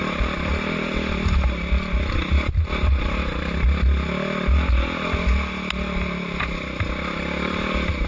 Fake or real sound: real